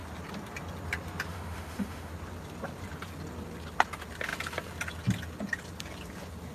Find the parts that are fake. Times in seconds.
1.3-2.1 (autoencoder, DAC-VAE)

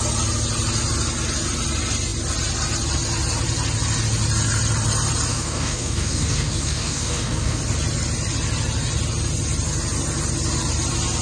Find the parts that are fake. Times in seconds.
5.3-7.6 (codec, DAC)

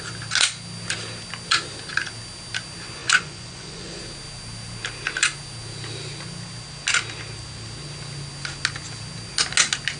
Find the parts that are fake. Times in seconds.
3.0-4.0 (vocoder, Vocos)

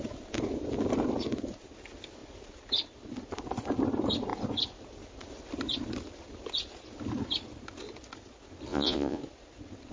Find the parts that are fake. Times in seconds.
8.7-9.2 (vocoder, Vocos)

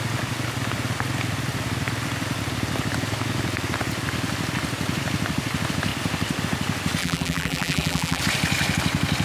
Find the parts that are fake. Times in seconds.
7.0-8.2 (vocoder, BigVGAN v2)